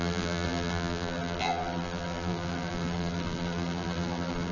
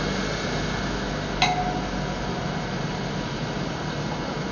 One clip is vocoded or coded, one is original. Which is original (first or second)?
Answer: second